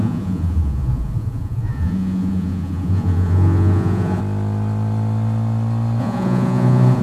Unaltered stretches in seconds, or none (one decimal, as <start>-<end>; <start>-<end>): 4.2-6.0